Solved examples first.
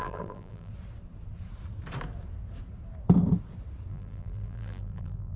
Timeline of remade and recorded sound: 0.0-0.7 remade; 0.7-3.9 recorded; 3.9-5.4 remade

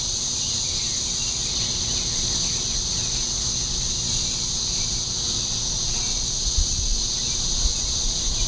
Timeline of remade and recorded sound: 0.0-6.9 recorded; 6.9-7.7 remade; 7.7-8.5 recorded

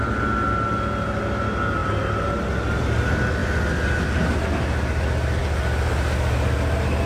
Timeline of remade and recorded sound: 0.0-7.1 recorded